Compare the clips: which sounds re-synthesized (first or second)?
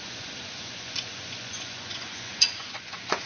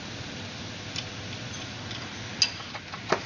first